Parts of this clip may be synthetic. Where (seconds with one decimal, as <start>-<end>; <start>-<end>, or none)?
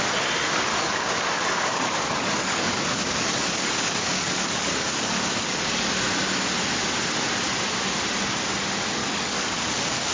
0.7-5.9; 9.0-10.1